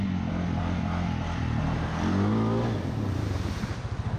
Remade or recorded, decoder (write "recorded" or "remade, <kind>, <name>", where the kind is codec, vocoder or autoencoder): recorded